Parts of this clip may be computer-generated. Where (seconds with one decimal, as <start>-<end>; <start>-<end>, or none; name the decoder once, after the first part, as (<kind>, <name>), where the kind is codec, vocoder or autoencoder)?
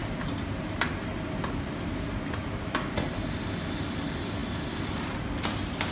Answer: none